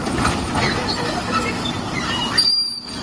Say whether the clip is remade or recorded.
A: recorded